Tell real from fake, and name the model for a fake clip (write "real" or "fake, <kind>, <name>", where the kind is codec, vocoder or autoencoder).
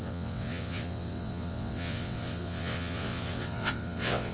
fake, vocoder, WaveNeXt